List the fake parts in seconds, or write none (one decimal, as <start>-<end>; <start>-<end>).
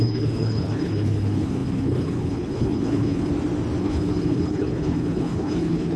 0.0-3.3; 3.8-6.0